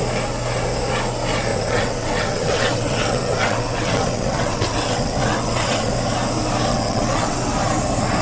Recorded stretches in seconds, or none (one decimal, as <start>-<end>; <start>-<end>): 0.0-1.5; 5.9-6.7; 7.5-8.2